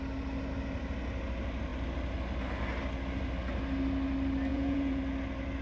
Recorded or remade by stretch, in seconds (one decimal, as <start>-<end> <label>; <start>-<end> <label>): 0.0-4.5 recorded; 4.5-5.0 remade; 5.0-5.6 recorded